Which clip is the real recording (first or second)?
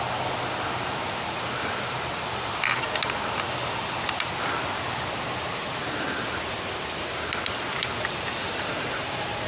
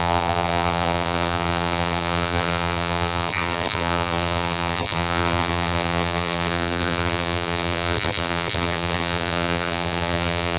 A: first